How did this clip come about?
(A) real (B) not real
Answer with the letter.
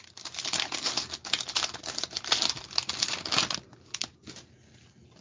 A